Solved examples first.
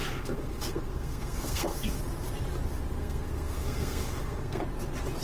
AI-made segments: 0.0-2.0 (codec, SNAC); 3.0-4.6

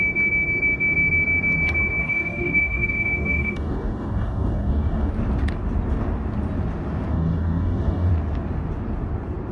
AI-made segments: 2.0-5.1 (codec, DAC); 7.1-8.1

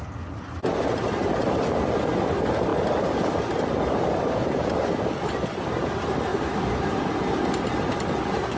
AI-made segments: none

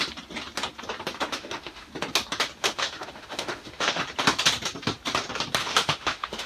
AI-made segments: 1.3-1.9 (autoencoder, DAC-VAE); 2.6-4.0; 5.6-6.5

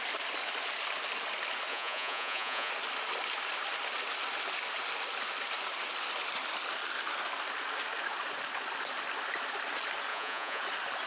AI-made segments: 1.7-2.7 (vocoder, Vocos); 10.1-10.6

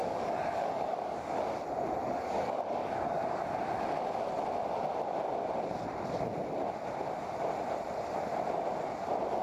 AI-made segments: 0.0-1.3 (codec, DAC); 2.0-3.6